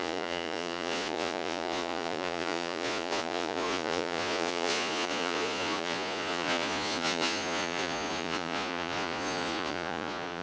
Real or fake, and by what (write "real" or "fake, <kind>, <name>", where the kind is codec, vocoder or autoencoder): fake, vocoder, Vocos